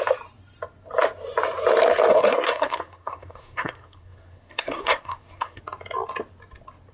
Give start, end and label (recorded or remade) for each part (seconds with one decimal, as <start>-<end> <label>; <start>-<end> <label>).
0.0-2.1 recorded; 2.1-5.6 remade; 5.6-6.9 recorded